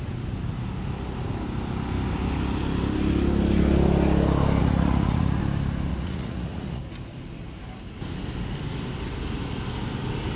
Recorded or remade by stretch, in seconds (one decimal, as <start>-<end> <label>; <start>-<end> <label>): 0.0-4.6 recorded; 4.6-5.4 remade; 5.4-5.9 recorded; 5.9-6.8 remade; 6.8-10.3 recorded